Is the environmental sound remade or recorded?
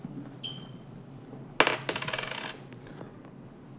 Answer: recorded